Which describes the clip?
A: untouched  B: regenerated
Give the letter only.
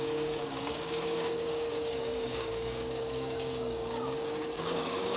B